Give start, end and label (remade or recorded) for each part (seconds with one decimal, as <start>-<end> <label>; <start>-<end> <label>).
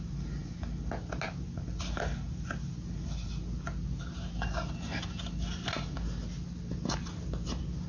0.0-7.9 recorded